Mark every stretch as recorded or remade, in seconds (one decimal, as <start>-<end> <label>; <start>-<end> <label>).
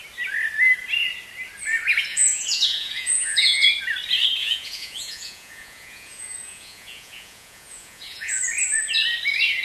0.0-2.1 recorded; 2.1-3.7 remade; 3.7-4.4 recorded; 4.4-8.4 remade; 8.4-9.6 recorded